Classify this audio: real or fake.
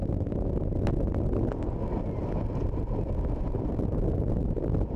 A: real